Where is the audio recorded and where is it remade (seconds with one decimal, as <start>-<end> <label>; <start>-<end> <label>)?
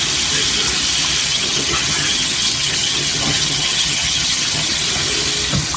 0.0-1.3 recorded; 1.3-4.8 remade; 4.8-5.8 recorded